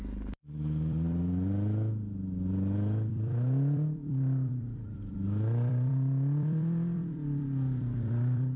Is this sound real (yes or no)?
no